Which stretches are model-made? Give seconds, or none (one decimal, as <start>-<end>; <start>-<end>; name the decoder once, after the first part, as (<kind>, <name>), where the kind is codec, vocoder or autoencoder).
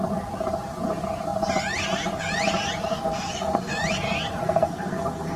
2.9-3.7 (codec, SNAC); 4.4-5.4